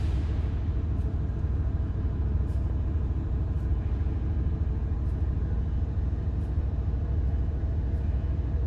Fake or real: real